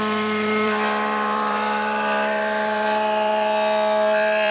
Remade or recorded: remade